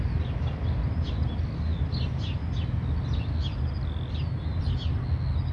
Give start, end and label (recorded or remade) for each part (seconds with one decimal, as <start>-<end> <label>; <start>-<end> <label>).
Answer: 0.0-5.5 recorded